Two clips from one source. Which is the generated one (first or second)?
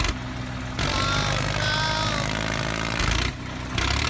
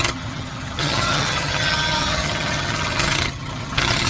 second